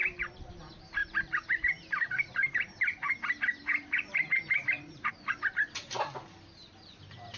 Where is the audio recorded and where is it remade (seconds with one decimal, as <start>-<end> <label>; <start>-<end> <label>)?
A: 0.0-0.5 remade; 0.5-1.0 recorded; 1.0-5.1 remade; 5.1-7.4 recorded